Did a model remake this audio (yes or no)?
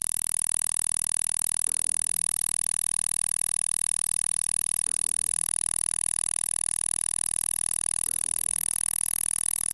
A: no